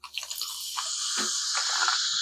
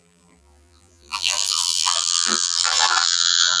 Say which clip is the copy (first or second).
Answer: second